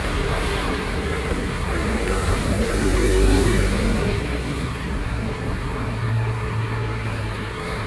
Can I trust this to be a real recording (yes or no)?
no